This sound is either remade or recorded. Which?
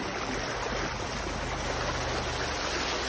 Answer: recorded